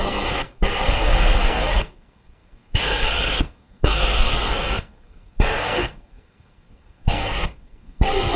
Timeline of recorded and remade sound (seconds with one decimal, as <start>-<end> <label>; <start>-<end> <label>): 0.0-8.4 remade